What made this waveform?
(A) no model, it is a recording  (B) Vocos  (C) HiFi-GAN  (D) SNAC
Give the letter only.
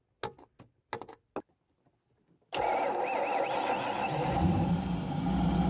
A